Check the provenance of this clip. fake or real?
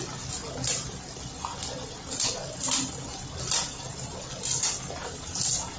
real